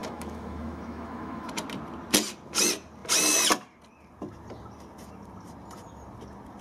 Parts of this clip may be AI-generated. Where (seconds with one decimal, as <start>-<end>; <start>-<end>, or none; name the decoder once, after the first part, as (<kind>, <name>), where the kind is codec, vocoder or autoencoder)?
0.0-1.5 (autoencoder, DAC-VAE)

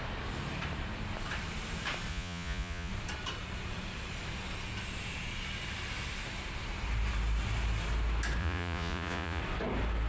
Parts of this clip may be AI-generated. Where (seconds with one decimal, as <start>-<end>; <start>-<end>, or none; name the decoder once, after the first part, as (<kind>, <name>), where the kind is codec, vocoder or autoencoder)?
2.1-2.9 (vocoder, Vocos); 8.4-9.4

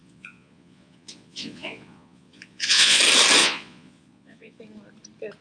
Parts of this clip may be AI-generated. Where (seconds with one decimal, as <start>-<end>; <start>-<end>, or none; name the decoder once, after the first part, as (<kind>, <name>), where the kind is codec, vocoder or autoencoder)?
0.0-3.0 (vocoder, Vocos); 3.4-4.6

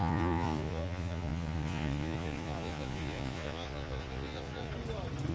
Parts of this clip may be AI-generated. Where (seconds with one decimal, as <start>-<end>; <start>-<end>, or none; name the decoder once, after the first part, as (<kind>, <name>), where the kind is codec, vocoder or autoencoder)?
0.0-4.7 (vocoder, Vocos)